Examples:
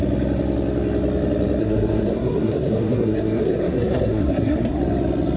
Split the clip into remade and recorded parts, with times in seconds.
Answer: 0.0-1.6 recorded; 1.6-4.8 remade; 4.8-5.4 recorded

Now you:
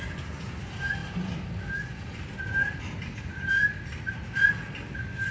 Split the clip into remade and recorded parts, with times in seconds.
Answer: 0.0-5.3 recorded